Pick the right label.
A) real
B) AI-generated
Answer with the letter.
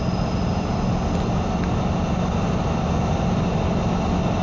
A